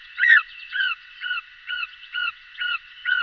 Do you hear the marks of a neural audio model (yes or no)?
yes